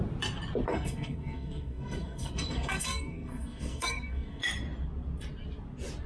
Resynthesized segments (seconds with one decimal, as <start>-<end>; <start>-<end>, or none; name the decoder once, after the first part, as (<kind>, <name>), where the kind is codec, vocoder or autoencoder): 0.7-4.4 (codec, SNAC)

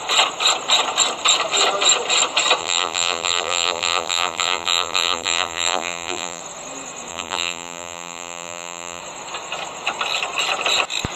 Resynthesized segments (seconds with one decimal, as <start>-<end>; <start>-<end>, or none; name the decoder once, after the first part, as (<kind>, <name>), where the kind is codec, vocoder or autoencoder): 2.6-6.4 (vocoder, BigVGAN v2); 7.1-9.0

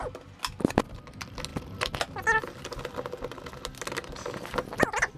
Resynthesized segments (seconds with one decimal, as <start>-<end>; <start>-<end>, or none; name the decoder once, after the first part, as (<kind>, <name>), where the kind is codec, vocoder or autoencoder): none

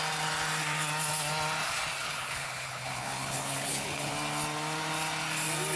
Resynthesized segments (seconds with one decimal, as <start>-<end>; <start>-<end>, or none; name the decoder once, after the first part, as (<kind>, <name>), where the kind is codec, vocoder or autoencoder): 2.0-4.1 (codec, HILCodec)

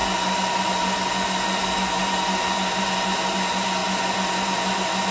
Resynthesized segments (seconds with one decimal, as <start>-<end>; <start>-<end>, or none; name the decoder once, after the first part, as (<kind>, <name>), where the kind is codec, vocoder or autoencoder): none

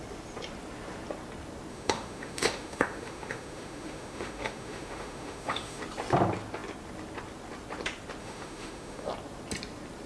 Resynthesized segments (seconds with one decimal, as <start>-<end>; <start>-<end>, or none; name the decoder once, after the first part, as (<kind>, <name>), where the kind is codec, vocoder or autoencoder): 1.7-5.8 (autoencoder, DAC-VAE); 8.2-9.1